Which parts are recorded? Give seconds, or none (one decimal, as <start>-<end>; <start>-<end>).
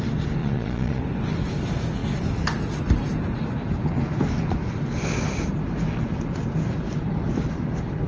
0.0-0.4; 1.0-8.1